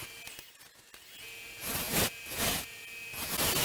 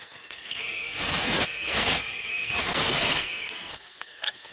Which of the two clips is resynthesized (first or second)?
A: second